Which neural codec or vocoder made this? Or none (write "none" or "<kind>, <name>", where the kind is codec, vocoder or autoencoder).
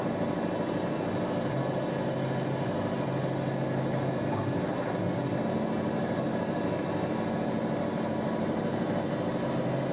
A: none